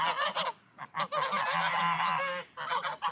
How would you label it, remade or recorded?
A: recorded